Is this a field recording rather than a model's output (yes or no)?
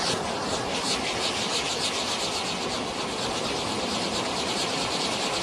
yes